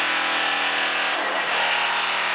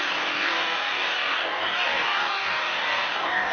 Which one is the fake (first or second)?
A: second